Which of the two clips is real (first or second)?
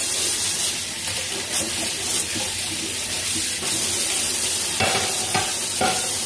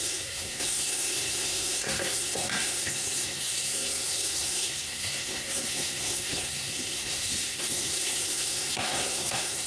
first